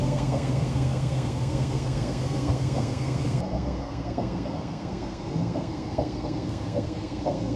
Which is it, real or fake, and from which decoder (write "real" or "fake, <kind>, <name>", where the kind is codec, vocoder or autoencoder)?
fake, codec, SNAC